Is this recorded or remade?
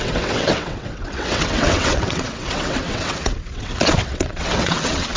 remade